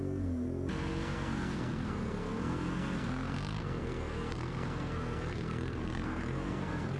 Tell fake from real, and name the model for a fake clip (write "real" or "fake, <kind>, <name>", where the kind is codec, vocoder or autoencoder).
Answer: fake, codec, SNAC